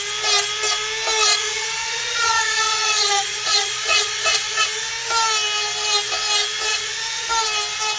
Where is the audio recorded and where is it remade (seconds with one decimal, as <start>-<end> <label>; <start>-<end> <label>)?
0.0-1.3 recorded; 1.3-4.9 remade; 4.9-6.7 recorded; 6.7-7.3 remade; 7.3-8.0 recorded